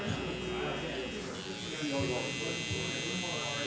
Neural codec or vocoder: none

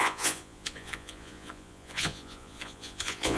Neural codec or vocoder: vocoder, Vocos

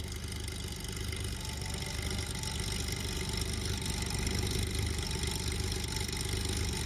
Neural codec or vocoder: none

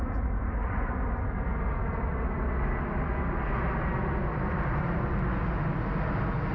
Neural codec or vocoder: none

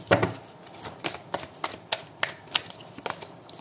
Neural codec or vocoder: none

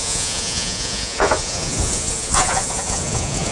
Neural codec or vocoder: vocoder, Vocos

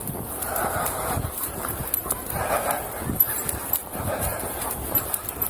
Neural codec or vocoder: none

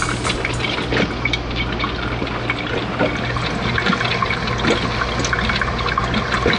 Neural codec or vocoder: none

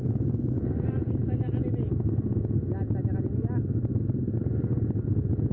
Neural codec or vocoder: none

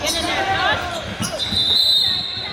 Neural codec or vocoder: none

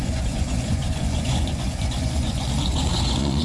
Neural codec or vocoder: vocoder, Vocos